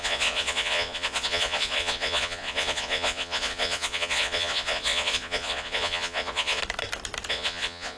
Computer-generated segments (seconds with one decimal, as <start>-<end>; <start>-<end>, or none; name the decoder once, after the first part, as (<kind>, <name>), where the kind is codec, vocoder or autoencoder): 0.0-6.6 (vocoder, Vocos); 7.3-8.0